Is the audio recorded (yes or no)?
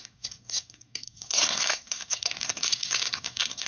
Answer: no